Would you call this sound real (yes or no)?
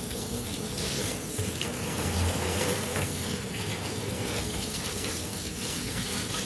no